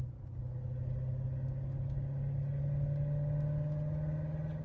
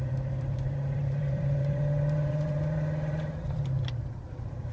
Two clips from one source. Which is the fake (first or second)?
second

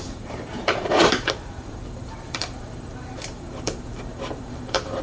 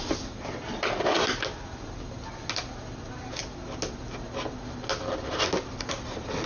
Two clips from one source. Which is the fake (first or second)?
first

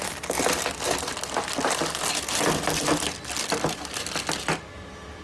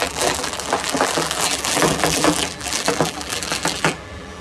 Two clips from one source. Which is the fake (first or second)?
second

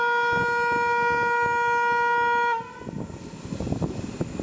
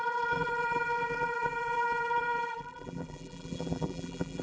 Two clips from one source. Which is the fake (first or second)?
second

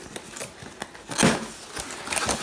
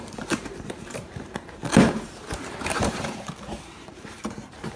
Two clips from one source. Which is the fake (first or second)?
second